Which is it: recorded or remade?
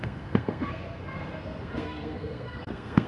remade